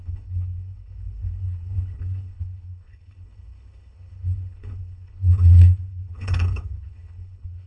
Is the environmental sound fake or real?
fake